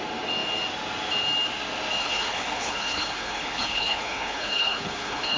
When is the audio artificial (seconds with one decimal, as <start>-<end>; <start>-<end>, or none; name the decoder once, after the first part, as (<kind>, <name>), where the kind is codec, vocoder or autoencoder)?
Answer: 2.0-5.4 (codec, HILCodec)